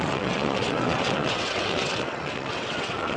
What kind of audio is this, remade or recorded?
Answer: remade